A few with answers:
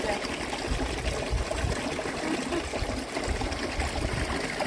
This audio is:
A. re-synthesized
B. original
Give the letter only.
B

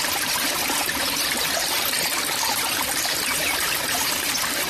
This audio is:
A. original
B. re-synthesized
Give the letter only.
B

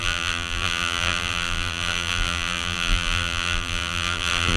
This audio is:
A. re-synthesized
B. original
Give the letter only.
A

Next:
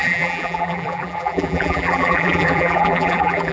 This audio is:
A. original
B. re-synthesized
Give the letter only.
B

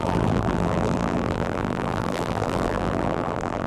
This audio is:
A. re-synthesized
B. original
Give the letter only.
A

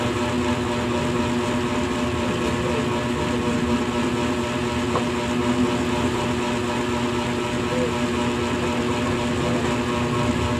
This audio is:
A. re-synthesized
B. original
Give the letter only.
B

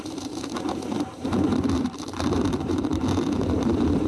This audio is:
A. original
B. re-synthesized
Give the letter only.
B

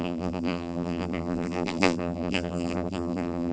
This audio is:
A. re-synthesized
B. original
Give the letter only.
A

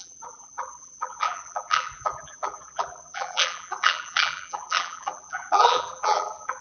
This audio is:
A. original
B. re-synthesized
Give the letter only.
B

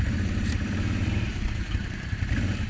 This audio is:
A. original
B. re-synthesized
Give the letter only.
B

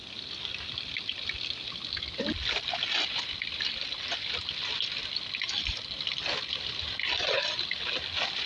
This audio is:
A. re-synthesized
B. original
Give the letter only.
B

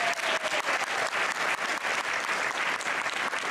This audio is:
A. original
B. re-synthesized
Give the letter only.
A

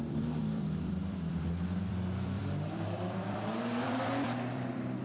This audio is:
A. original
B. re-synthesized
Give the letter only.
B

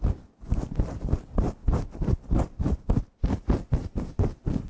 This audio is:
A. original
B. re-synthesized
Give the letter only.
B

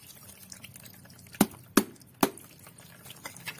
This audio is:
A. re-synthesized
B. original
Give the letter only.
B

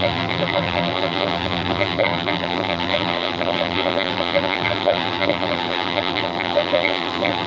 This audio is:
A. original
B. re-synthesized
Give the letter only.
B